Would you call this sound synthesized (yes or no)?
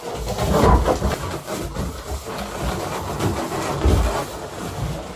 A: no